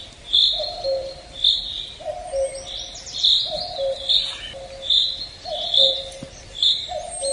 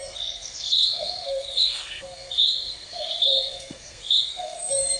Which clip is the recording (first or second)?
first